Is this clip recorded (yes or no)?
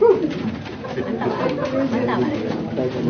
yes